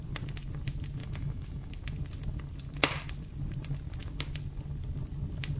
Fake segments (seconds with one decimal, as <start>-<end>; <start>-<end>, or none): 1.0-1.7